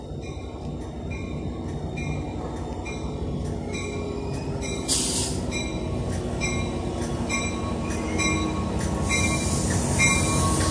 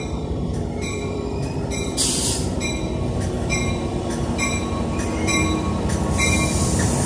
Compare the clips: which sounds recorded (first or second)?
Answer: first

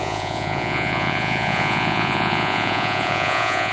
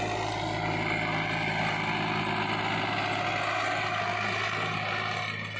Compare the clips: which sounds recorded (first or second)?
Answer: second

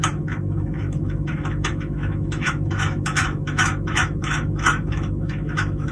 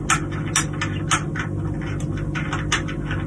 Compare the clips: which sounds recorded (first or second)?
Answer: second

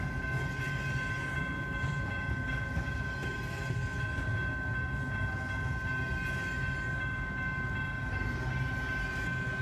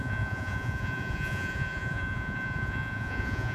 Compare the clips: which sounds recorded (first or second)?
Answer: first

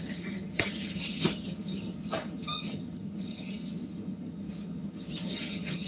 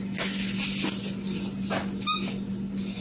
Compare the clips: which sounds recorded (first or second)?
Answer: second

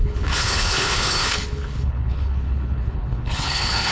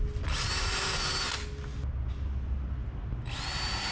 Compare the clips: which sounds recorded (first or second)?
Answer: second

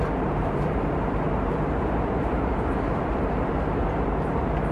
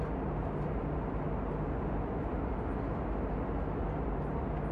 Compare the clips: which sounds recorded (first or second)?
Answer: second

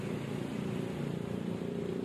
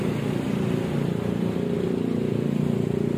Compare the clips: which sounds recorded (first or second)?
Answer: second